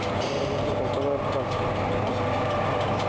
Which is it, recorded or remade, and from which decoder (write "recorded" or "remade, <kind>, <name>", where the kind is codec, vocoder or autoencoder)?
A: recorded